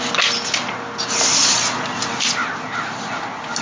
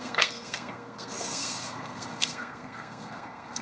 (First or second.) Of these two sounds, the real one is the first